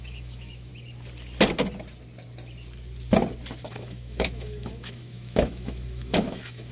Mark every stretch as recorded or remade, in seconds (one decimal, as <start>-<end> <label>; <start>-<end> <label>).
0.0-0.7 remade; 0.7-3.7 recorded; 3.7-6.7 remade